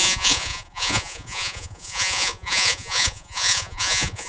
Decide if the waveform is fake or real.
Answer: fake